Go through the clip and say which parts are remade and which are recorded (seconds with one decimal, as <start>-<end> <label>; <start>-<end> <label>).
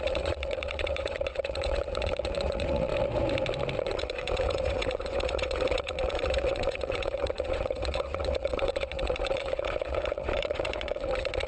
0.0-2.9 remade; 2.9-3.8 recorded; 3.8-11.5 remade